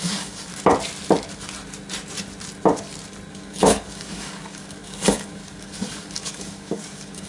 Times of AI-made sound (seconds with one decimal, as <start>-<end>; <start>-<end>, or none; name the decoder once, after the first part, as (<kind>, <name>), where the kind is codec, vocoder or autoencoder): 0.0-0.5 (codec, DAC); 3.3-7.3